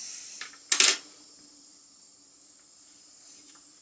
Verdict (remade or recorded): recorded